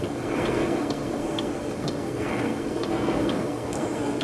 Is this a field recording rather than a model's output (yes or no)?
no